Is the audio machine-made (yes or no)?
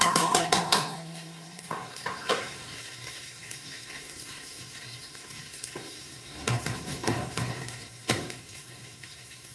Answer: yes